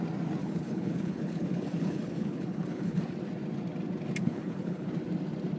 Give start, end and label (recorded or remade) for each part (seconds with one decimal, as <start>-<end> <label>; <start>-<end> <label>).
0.0-0.4 recorded; 0.4-3.0 remade; 3.0-4.2 recorded; 4.2-4.9 remade; 4.9-5.6 recorded